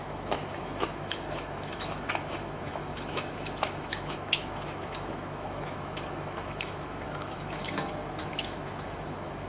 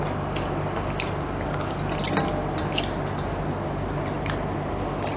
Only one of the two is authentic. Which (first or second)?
second